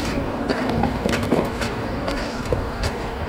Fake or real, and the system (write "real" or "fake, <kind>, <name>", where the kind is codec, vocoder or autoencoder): fake, codec, DAC